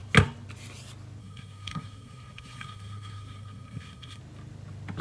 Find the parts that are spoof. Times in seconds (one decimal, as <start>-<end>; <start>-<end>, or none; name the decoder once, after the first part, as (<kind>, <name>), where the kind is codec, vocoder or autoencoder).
1.2-4.2 (codec, SNAC)